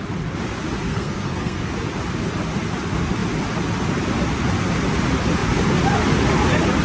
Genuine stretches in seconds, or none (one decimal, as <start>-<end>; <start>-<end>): 0.0-0.9; 1.7-6.8